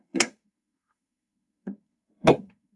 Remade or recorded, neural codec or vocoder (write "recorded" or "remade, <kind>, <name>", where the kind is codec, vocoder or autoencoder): remade, codec, SNAC